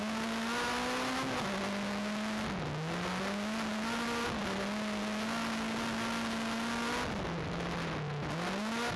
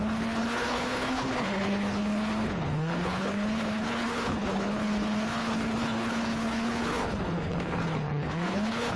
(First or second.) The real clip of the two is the first